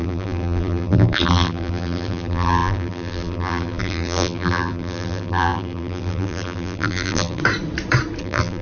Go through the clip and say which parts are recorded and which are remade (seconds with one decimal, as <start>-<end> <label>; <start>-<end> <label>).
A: 0.0-7.4 remade; 7.4-8.2 recorded; 8.2-8.6 remade